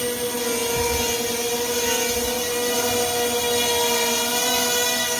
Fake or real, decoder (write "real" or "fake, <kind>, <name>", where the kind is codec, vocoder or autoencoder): real